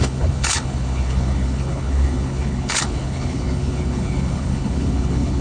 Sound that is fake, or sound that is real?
fake